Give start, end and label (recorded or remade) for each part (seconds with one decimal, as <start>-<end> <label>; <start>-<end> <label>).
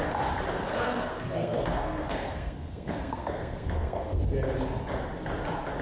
0.0-0.7 recorded; 0.7-4.2 remade; 4.2-5.8 recorded